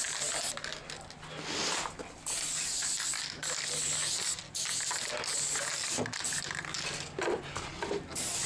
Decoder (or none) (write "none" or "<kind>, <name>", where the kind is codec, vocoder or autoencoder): none